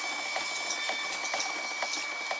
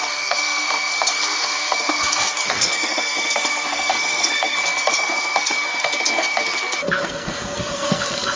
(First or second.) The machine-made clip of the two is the second